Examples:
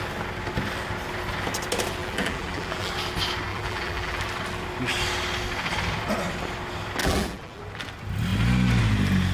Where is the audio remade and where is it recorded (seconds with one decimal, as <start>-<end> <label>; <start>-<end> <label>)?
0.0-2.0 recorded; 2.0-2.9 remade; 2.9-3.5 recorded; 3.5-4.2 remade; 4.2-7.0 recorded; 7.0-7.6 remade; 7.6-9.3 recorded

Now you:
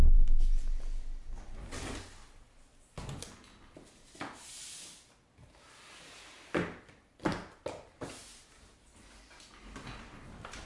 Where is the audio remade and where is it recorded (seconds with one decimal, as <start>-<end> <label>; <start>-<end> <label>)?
0.0-7.1 recorded; 7.1-8.1 remade; 8.1-10.7 recorded

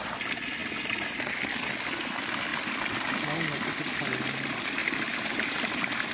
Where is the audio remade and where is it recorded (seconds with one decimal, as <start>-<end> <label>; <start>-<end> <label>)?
0.0-6.1 recorded